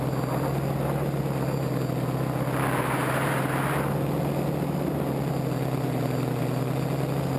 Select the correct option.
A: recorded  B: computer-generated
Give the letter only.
A